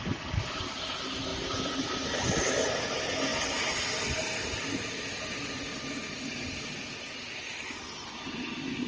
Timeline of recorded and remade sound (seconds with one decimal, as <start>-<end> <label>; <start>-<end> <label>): 0.0-1.3 recorded; 1.3-2.4 remade; 2.4-8.9 recorded